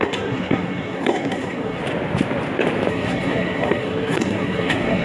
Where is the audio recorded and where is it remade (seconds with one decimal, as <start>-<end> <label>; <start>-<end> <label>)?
0.0-1.8 remade; 1.8-2.9 recorded; 2.9-5.0 remade

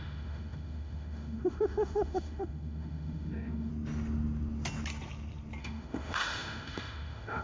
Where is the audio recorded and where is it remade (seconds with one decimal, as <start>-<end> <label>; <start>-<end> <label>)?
0.0-3.7 remade; 3.7-5.6 recorded; 5.6-7.4 remade

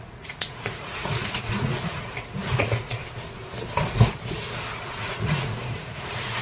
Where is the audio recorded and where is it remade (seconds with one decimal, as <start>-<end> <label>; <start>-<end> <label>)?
0.0-3.0 remade; 3.0-4.8 recorded; 4.8-6.4 remade

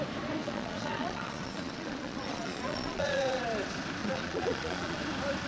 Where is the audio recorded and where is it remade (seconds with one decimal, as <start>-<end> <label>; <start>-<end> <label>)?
0.0-0.4 recorded; 0.4-3.4 remade; 3.4-4.0 recorded; 4.0-5.0 remade; 5.0-5.5 recorded

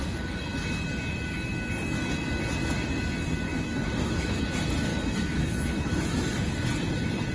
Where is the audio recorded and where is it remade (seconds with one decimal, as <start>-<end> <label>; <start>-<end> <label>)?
0.0-3.5 recorded; 3.5-4.4 remade; 4.4-4.9 recorded; 4.9-6.4 remade; 6.4-7.3 recorded